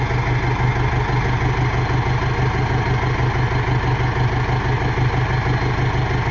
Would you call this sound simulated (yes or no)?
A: no